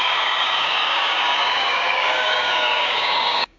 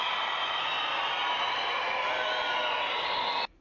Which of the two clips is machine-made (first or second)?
first